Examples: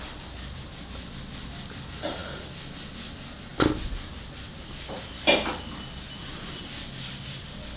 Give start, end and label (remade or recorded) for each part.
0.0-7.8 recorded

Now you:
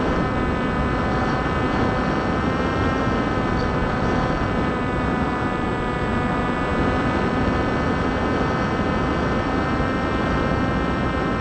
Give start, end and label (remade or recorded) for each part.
0.0-11.4 recorded